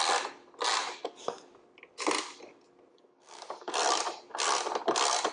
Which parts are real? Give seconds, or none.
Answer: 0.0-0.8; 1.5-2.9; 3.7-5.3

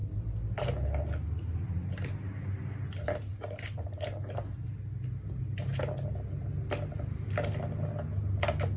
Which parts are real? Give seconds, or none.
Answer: 0.0-8.8

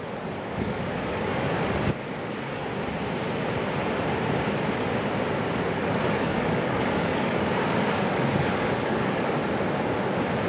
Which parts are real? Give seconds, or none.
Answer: 2.6-5.4; 9.4-10.5

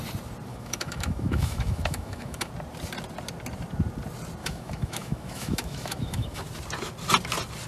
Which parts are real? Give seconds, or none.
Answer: 0.0-0.5; 2.5-4.4; 6.4-7.7

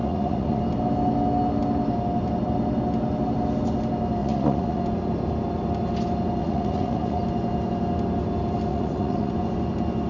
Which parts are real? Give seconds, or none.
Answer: 0.6-4.2; 4.8-6.4; 7.2-8.7; 9.3-10.1

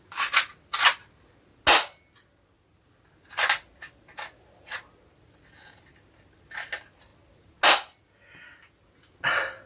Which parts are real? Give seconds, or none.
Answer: 0.0-9.7

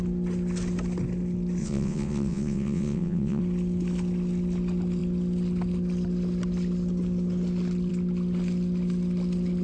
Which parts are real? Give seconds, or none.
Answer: 0.0-1.6; 3.4-9.6

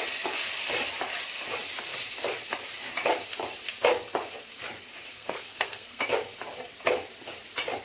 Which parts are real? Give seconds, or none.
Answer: 0.0-5.1; 6.0-7.8